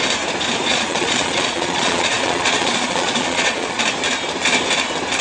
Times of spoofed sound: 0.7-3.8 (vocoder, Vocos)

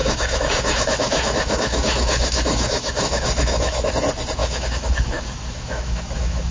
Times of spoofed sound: 0.0-3.9 (autoencoder, DAC-VAE); 4.4-6.5

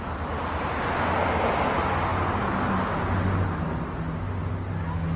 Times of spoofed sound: none

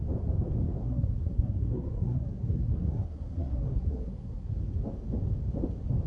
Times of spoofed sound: 0.8-4.5 (codec, SNAC)

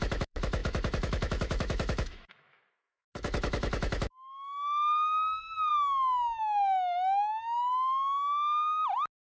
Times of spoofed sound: 0.0-5.7 (autoencoder, DAC-VAE); 6.4-7.9

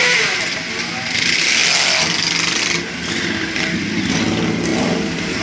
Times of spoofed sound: none

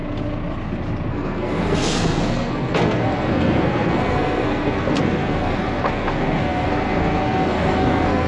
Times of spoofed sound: 1.1-8.3 (codec, SNAC)